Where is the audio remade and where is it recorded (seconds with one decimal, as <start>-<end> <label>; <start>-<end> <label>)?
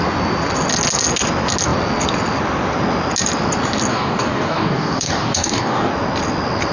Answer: 0.0-3.9 recorded; 3.9-5.9 remade; 5.9-6.7 recorded